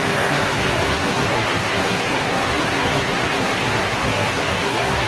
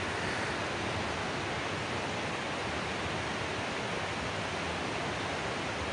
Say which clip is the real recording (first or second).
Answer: second